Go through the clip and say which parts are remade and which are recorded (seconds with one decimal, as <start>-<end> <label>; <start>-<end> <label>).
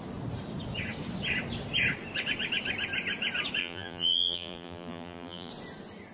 0.0-3.6 recorded; 3.6-5.5 remade; 5.5-6.1 recorded